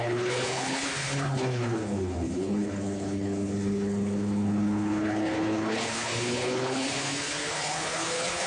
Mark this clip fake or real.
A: fake